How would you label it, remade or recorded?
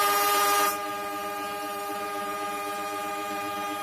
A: remade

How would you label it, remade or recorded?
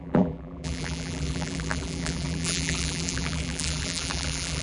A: remade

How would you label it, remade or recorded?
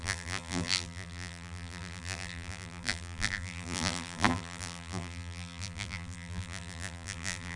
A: remade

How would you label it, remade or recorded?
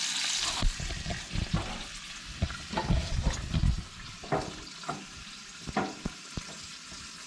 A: remade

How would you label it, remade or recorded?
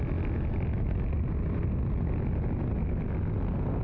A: recorded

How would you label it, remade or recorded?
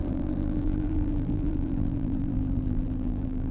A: remade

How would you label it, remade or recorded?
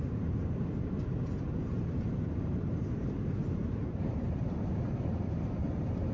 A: remade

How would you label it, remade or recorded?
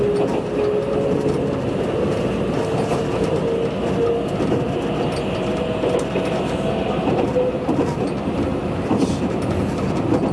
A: recorded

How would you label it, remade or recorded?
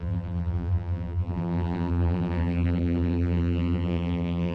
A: remade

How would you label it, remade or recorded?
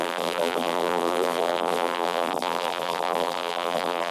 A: remade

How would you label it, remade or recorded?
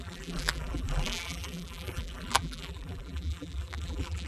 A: remade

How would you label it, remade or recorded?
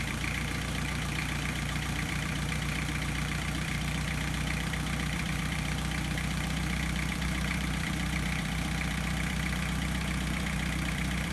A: remade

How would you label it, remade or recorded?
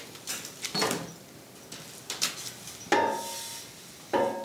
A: recorded